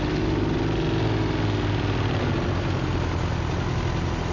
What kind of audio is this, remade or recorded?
recorded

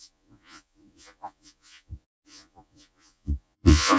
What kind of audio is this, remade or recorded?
remade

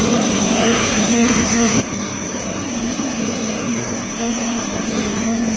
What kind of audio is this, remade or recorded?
remade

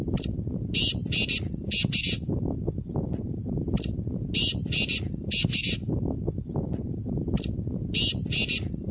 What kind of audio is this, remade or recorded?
remade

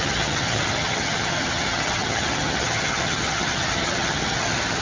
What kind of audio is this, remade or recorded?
remade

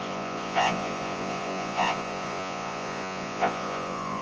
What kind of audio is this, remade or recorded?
remade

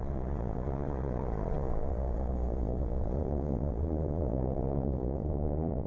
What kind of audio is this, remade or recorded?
remade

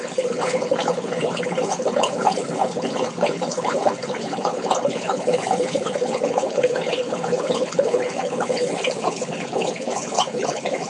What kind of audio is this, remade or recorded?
remade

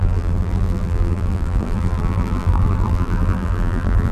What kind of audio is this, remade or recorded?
remade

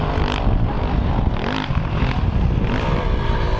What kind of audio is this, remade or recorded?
recorded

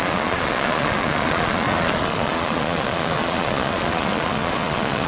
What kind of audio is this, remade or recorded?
remade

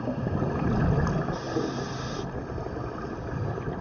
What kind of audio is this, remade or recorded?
recorded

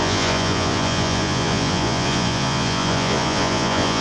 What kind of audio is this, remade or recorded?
remade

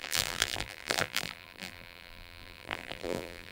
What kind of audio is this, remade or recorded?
remade